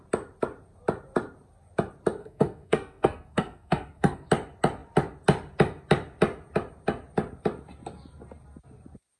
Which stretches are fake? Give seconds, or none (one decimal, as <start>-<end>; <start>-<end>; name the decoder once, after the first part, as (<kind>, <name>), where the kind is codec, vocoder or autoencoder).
2.2-4.3 (codec, SNAC)